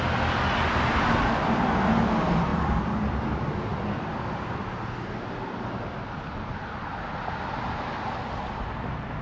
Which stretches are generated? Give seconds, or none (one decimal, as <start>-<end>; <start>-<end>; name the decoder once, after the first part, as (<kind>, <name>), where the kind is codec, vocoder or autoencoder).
none